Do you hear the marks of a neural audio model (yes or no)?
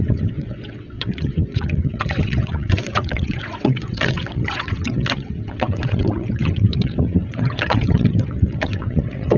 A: yes